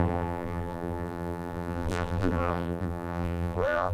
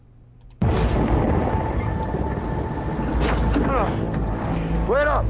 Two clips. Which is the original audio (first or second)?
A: second